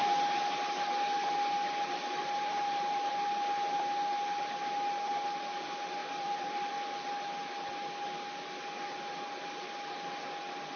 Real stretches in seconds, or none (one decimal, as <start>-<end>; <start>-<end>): 0.0-1.9; 3.1-6.0; 6.7-10.8